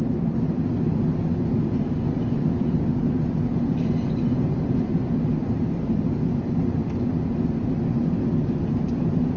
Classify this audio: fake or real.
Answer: real